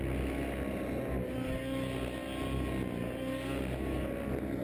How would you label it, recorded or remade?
recorded